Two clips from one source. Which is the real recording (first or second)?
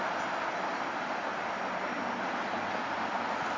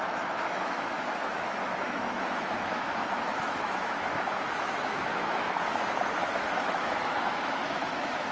first